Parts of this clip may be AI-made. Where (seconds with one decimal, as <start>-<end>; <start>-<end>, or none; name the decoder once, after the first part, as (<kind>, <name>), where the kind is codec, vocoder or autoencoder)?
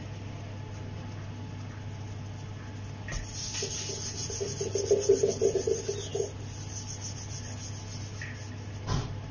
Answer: none